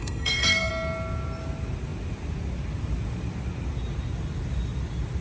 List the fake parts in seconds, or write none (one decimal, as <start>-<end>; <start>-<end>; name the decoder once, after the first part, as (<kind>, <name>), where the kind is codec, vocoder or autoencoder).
0.0-0.7 (codec, SNAC)